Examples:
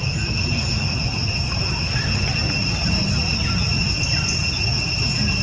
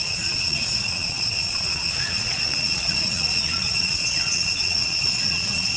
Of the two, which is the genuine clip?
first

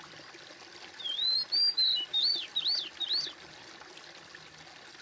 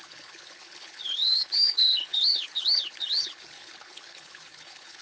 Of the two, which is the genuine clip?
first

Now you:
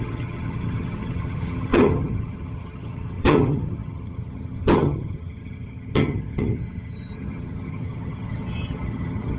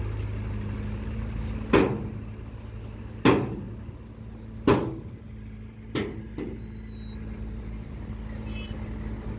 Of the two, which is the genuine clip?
second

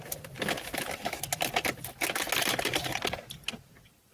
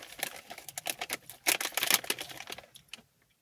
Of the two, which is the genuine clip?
second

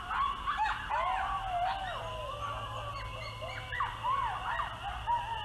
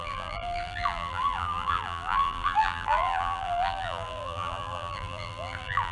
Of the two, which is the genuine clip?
first